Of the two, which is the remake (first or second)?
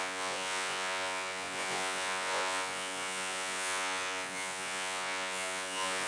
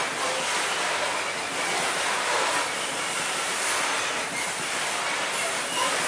first